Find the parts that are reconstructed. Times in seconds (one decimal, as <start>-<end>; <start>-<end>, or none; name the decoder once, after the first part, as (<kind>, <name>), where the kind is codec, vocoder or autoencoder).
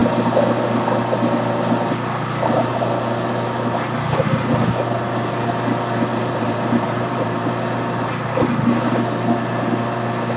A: 6.1-7.5 (vocoder, BigVGAN v2)